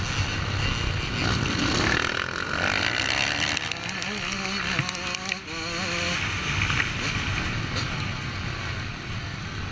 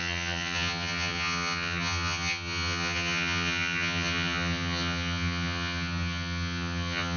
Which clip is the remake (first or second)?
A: second